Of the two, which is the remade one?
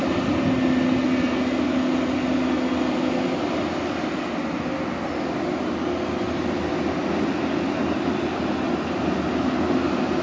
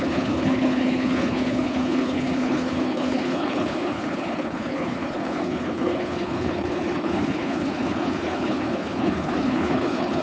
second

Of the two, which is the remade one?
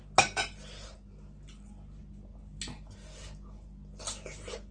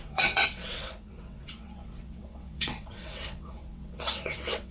second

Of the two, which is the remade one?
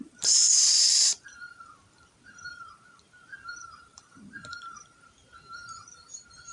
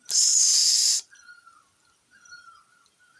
first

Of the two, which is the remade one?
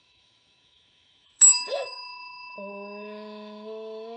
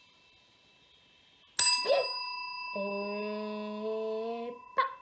first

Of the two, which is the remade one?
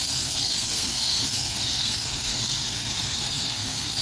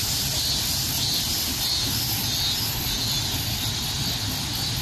first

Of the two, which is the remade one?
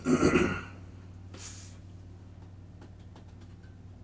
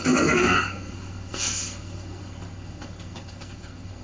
second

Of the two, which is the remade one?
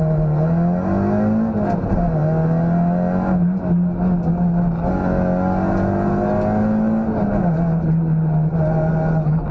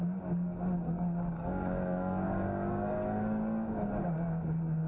second